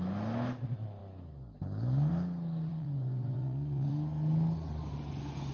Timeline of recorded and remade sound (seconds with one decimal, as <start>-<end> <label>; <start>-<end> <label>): 0.0-2.7 recorded; 2.7-3.9 remade; 3.9-5.5 recorded